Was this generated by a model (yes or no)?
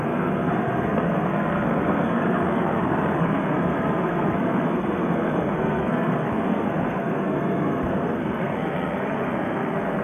yes